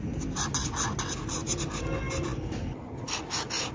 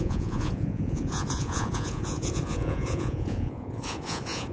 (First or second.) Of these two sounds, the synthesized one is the second